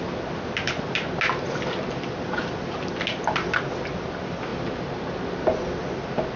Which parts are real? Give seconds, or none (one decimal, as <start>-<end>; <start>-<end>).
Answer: 0.0-6.4